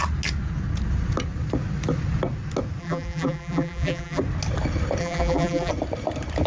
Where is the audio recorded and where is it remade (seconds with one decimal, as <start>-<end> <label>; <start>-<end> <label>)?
0.0-2.8 recorded; 2.8-4.2 remade; 4.2-5.0 recorded; 5.0-5.7 remade; 5.7-6.5 recorded